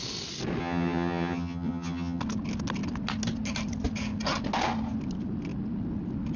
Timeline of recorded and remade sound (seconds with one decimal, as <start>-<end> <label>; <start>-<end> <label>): 0.0-0.6 recorded; 0.6-2.2 remade; 2.2-6.4 recorded